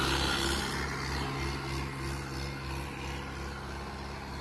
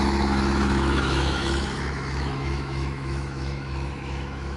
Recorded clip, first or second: first